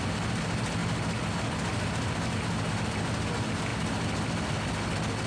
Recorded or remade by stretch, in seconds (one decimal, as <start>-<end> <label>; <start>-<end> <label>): 0.0-5.3 recorded

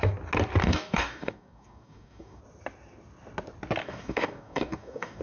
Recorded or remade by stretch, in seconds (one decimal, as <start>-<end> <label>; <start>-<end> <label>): 0.0-0.6 recorded; 0.6-2.4 remade; 2.4-3.8 recorded; 3.8-5.2 remade

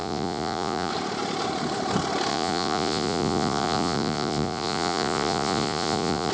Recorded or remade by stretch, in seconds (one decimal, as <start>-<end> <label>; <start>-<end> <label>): 0.0-0.9 remade; 0.9-2.3 recorded; 2.3-6.3 remade